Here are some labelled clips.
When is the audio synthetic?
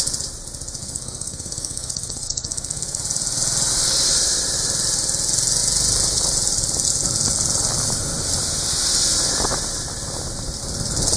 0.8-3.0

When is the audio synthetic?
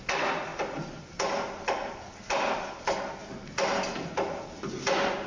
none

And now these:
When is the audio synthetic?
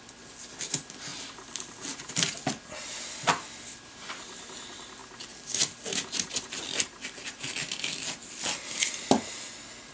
1.1-2.1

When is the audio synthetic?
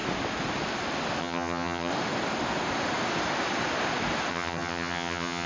1.2-1.9; 4.3-5.5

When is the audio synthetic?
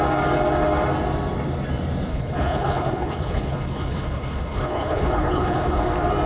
2.1-5.8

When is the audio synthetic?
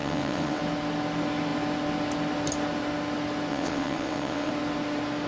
0.0-0.6; 3.5-4.5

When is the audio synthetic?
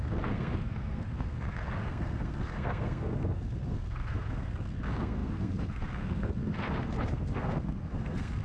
0.0-8.4